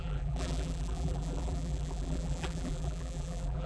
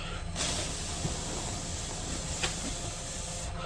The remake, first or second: first